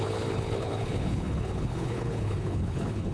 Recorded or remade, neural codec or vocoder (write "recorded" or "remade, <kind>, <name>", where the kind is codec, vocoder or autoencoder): remade, codec, HILCodec